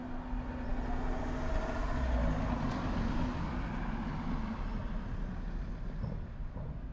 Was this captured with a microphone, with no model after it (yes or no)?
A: yes